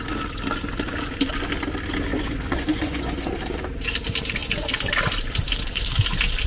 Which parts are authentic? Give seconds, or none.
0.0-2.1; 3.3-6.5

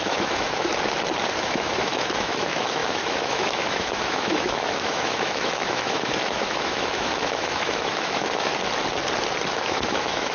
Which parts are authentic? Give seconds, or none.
0.7-1.4; 8.5-9.5

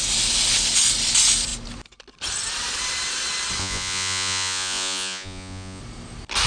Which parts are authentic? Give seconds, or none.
0.0-3.6; 5.8-6.5

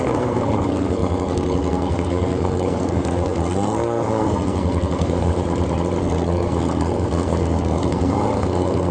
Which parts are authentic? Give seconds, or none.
5.3-6.0

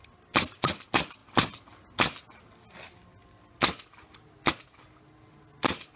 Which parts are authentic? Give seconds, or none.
0.0-6.0

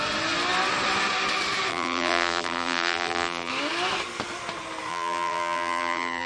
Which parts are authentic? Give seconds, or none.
0.0-1.7; 3.5-4.9